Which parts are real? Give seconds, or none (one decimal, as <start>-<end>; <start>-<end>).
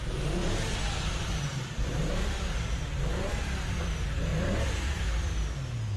4.3-6.0